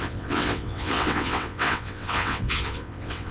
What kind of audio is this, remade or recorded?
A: remade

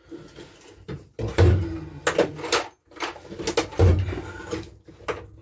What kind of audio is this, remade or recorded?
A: recorded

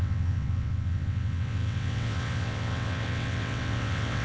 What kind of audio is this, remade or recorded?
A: remade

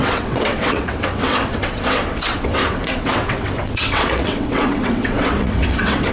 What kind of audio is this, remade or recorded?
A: remade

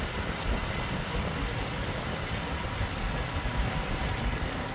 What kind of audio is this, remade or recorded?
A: recorded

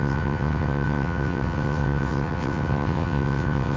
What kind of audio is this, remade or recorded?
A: remade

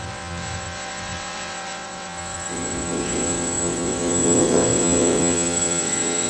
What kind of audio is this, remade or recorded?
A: remade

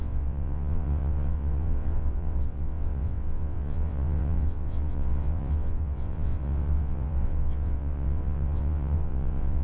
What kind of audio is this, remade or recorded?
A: remade